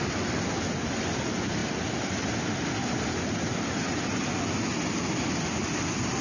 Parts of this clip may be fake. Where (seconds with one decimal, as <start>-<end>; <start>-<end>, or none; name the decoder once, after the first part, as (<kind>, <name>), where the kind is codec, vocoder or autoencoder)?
none